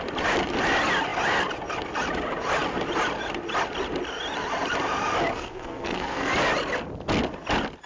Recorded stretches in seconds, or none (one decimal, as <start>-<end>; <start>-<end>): 0.0-5.3; 6.3-7.9